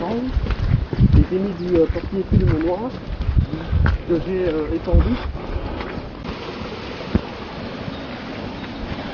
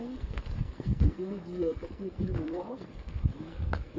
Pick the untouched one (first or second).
first